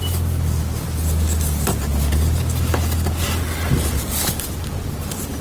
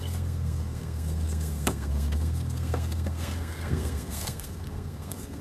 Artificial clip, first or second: second